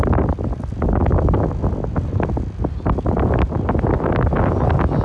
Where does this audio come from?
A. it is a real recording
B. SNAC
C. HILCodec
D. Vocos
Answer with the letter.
A